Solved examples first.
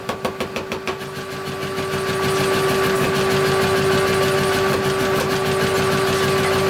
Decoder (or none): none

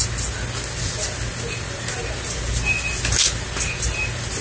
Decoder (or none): none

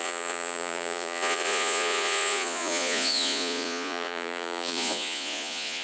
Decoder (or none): vocoder, Vocos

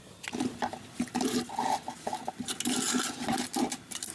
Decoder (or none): none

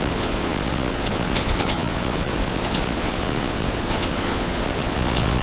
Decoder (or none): vocoder, Vocos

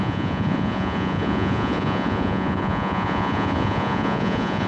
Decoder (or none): vocoder, Vocos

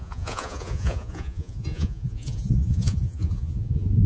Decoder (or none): vocoder, Vocos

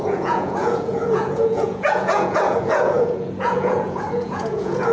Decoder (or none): vocoder, Vocos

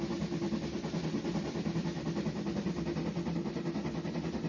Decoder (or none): none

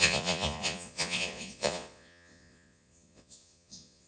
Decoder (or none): vocoder, Vocos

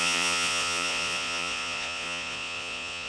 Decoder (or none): vocoder, Vocos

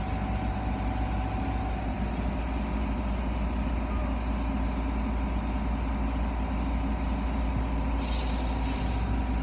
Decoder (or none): none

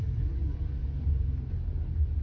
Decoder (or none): none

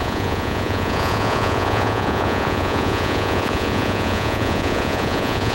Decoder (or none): vocoder, Vocos